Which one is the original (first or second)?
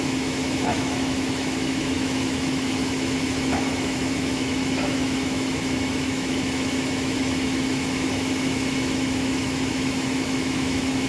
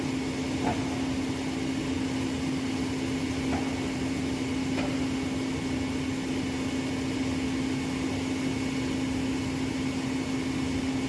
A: second